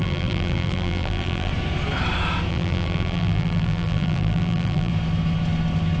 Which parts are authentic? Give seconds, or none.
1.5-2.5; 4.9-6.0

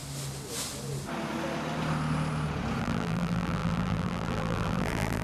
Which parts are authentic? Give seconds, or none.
0.0-2.8

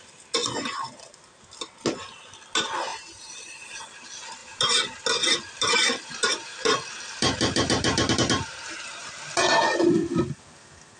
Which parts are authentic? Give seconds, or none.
0.0-0.4; 1.1-2.9; 3.8-4.4; 9.1-11.0